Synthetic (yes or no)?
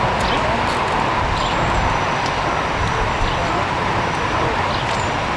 no